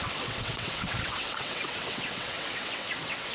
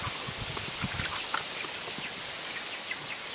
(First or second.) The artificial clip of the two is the first